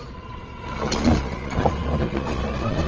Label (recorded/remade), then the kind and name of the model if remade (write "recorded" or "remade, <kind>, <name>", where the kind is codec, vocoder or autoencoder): remade, vocoder, Vocos